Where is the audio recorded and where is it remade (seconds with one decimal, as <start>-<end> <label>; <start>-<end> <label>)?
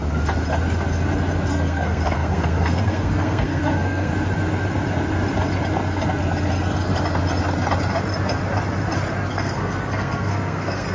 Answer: 0.0-1.5 recorded; 1.5-4.1 remade; 4.1-9.3 recorded; 9.3-10.9 remade